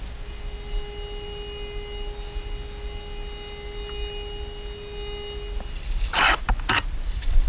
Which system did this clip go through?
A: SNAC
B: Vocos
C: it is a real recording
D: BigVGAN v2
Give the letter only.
C